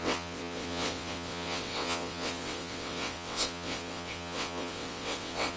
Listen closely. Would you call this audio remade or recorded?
remade